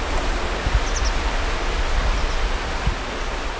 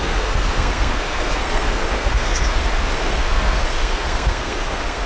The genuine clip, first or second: first